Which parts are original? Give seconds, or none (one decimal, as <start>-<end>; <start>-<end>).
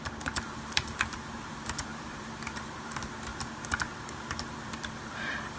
none